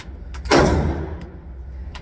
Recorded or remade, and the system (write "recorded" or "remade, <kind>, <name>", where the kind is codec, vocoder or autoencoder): recorded